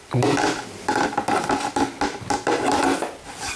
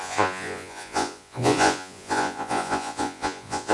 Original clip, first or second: first